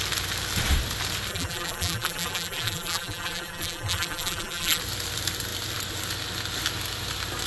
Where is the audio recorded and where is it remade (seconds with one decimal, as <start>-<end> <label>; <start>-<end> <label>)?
0.0-1.3 recorded; 1.3-4.8 remade; 4.8-7.5 recorded